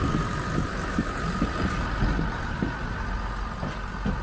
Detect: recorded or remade recorded